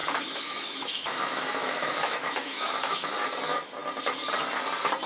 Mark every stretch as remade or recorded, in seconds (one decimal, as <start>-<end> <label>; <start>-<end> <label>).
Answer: 0.0-3.1 remade; 3.1-5.1 recorded

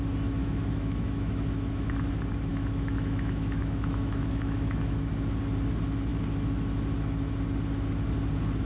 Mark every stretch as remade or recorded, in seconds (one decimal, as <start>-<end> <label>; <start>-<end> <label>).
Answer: 0.0-0.4 recorded; 0.4-2.1 remade; 2.1-2.5 recorded; 2.5-5.1 remade; 5.1-8.6 recorded

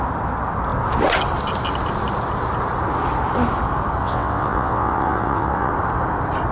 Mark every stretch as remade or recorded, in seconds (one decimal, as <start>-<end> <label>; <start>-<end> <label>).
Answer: 0.0-4.0 recorded; 4.0-5.7 remade; 5.7-6.5 recorded

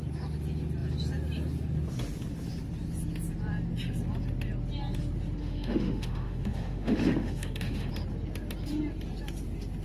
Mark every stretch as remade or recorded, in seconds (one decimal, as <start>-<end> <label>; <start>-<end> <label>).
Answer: 0.0-5.4 recorded; 5.4-7.9 remade; 7.9-9.8 recorded

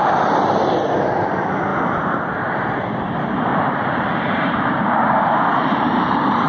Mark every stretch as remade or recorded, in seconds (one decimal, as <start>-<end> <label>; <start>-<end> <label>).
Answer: 0.0-3.5 recorded; 3.5-4.9 remade; 4.9-5.5 recorded; 5.5-6.5 remade

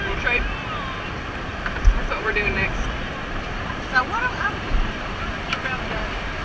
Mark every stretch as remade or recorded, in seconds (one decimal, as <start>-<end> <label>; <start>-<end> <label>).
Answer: 0.0-1.5 recorded; 1.5-5.3 remade; 5.3-6.4 recorded